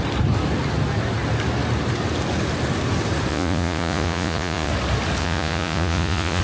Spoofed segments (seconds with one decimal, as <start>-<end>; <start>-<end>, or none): 3.3-4.7; 5.2-6.4